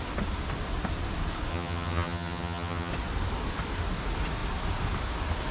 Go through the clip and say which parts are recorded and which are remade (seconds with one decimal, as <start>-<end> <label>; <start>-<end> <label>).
0.0-1.5 recorded; 1.5-2.9 remade; 2.9-5.5 recorded